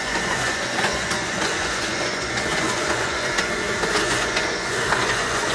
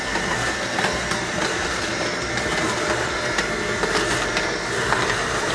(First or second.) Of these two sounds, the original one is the second